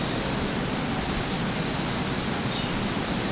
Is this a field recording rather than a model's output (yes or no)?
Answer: yes